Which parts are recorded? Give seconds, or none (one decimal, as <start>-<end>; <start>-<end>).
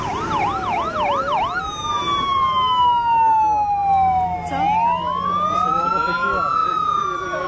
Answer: 0.0-7.5